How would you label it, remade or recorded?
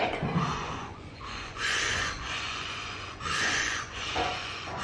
remade